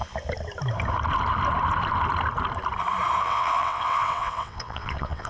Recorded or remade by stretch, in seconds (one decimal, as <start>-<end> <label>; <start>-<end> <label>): 0.0-3.2 recorded; 3.2-5.3 remade